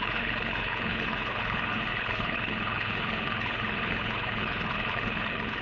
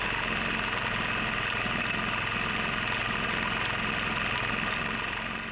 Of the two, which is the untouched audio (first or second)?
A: second